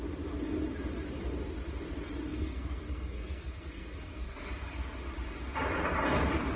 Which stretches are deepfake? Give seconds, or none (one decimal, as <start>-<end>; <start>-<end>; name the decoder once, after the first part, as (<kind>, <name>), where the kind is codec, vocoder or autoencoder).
2.3-4.5 (codec, SNAC)